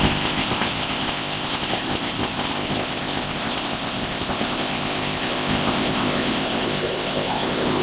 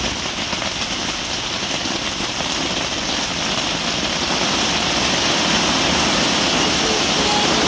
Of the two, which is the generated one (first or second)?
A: first